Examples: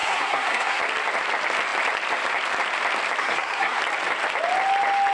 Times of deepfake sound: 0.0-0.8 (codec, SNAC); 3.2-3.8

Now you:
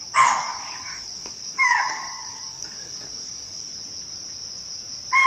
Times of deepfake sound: 0.5-3.7 (codec, DAC)

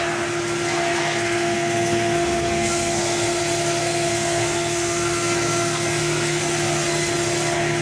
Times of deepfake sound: 1.0-3.4 (codec, SNAC); 3.8-6.4

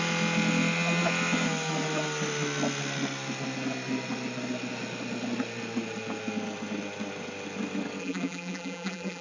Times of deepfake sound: 8.0-9.2 (vocoder, BigVGAN v2)